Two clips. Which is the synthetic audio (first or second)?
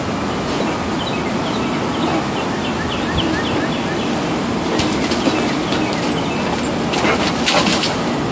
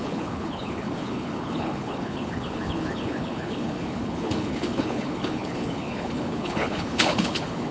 second